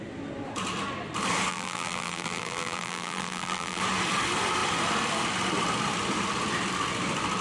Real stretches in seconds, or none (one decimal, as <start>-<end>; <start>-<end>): 0.0-1.5; 3.8-7.4